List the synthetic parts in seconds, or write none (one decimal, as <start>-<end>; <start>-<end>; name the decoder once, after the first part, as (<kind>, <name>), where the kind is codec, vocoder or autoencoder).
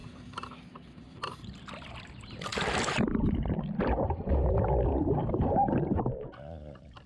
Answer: 0.0-2.1 (vocoder, BigVGAN v2); 5.2-7.1